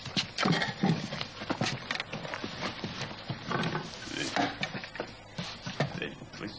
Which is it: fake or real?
real